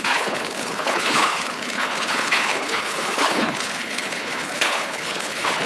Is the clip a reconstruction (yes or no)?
yes